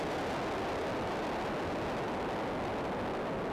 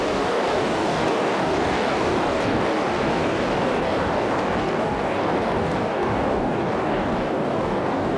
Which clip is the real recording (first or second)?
first